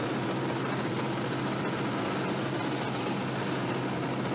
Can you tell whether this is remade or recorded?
recorded